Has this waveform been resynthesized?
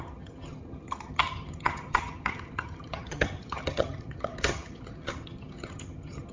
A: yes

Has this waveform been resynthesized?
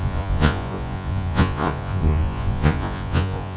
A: yes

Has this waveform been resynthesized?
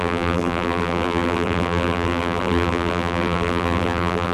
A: yes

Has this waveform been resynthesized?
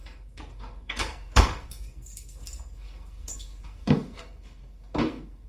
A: yes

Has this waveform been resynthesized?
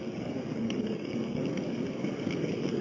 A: yes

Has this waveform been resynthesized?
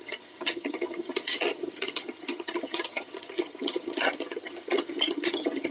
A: yes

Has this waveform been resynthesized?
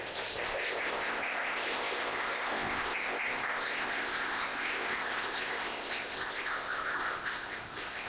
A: yes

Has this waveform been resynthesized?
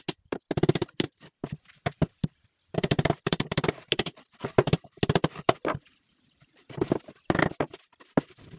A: no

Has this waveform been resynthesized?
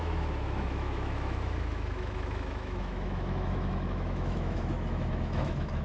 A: yes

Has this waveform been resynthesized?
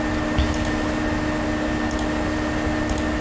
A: no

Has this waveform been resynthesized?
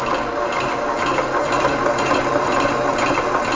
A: no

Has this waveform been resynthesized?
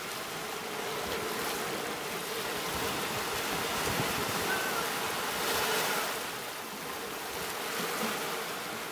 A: no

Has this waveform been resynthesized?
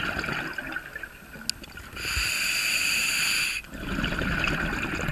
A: no